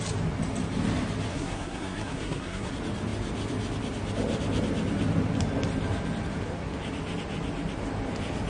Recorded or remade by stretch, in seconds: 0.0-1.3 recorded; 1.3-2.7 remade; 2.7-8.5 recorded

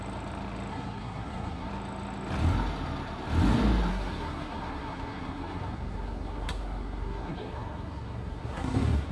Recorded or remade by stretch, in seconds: 0.0-0.7 recorded; 0.7-1.7 remade; 1.7-3.9 recorded; 3.9-9.1 remade

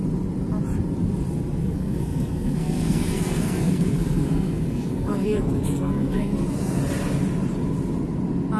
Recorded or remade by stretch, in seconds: 0.0-1.6 recorded; 1.6-6.8 remade; 6.8-8.6 recorded

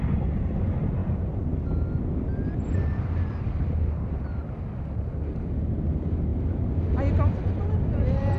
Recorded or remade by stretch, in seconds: 0.0-8.4 recorded

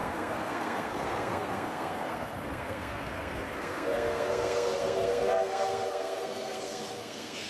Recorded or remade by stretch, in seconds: 0.0-7.5 remade

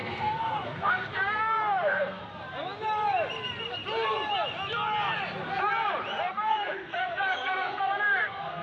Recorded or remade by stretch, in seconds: 0.0-2.2 remade; 2.2-6.3 recorded; 6.3-8.6 remade

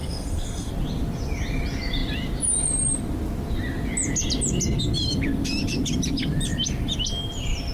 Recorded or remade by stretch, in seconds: 0.0-0.7 remade; 0.7-7.7 recorded

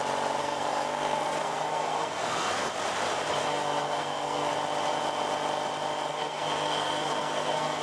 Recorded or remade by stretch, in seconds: 0.0-0.4 recorded; 0.4-2.7 remade; 2.7-3.4 recorded; 3.4-4.5 remade; 4.5-6.1 recorded; 6.1-7.8 remade